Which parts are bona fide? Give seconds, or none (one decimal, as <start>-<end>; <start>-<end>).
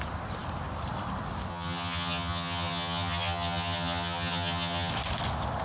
0.0-1.5; 4.9-5.6